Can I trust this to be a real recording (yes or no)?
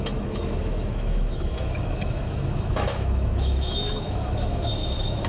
no